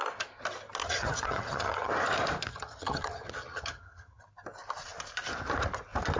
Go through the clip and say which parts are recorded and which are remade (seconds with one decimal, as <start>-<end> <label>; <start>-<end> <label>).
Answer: 0.0-0.8 recorded; 0.8-1.9 remade; 1.9-2.5 recorded; 2.5-4.2 remade; 4.2-6.2 recorded